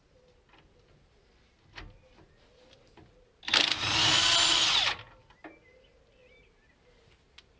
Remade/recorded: recorded